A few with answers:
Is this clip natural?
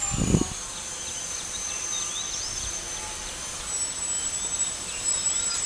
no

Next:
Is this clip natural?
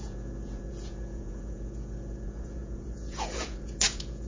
no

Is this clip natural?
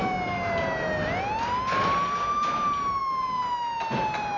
yes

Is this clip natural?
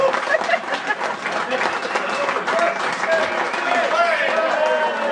yes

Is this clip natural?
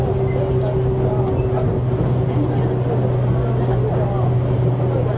yes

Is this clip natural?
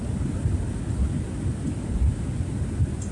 yes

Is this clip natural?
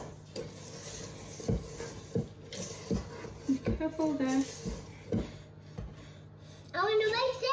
yes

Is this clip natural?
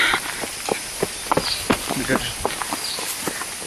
yes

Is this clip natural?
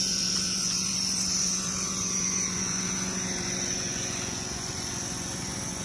no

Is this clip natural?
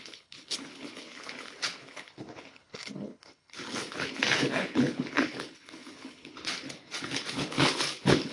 no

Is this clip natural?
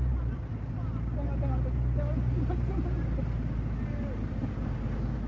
yes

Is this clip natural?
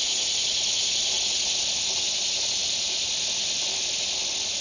yes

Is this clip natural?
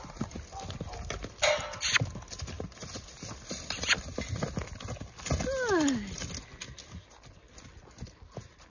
yes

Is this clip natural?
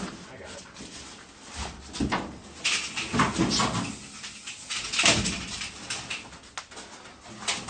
yes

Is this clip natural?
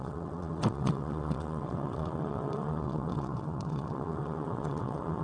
no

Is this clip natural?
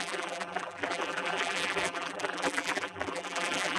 no